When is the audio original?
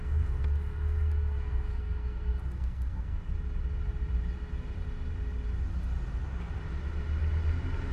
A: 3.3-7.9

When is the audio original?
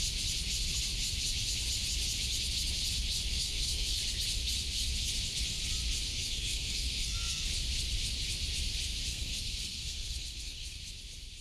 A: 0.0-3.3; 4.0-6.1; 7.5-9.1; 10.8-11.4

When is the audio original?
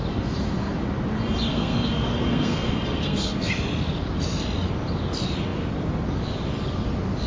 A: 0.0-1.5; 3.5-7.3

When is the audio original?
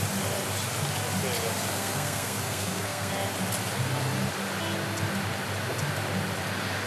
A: 0.0-1.7; 3.1-6.9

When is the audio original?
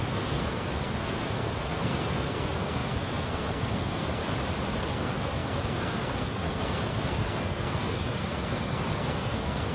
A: 4.2-4.8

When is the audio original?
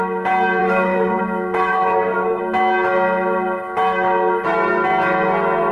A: 0.0-0.6; 1.2-1.7; 2.4-5.7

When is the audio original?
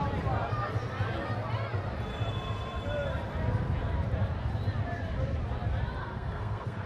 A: 0.0-6.0